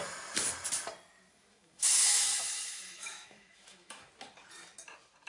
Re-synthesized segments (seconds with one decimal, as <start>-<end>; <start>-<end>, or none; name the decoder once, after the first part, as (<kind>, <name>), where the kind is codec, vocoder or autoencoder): 1.3-4.1 (autoencoder, DAC-VAE)